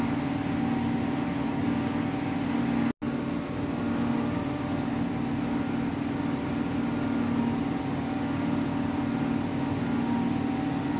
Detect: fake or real real